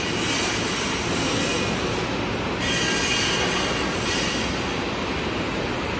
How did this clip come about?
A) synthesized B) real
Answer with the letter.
B